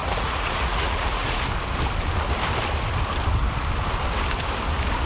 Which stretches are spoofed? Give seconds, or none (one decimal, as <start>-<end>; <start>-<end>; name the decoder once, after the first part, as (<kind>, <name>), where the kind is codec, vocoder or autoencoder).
0.0-1.4 (vocoder, Vocos)